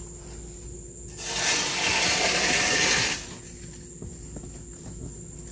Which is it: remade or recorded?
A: recorded